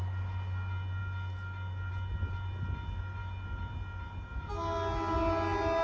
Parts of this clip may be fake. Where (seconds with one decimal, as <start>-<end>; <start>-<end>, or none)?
none